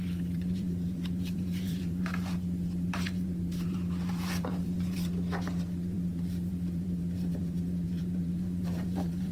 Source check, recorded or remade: remade